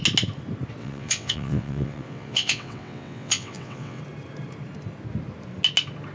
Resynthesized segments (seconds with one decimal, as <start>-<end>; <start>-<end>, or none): 0.8-4.0